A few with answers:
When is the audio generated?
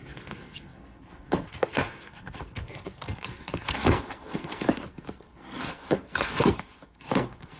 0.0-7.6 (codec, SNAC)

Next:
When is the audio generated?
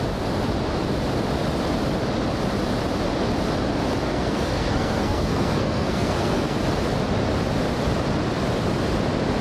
4.0-6.6 (codec, SNAC)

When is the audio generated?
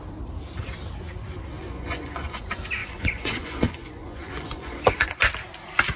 1.6-2.4 (vocoder, Vocos); 2.8-5.2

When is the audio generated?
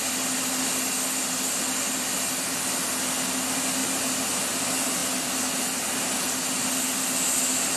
3.8-4.4 (vocoder, BigVGAN v2)